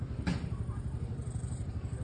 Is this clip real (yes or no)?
no